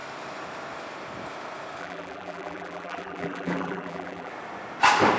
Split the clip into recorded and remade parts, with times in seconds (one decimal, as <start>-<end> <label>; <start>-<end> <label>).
0.0-1.8 recorded; 1.8-4.3 remade; 4.3-5.2 recorded